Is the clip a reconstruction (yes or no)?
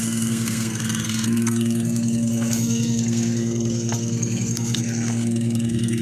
yes